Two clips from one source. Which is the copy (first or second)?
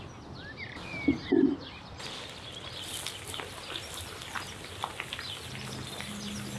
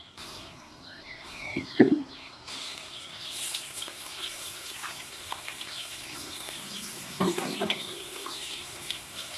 second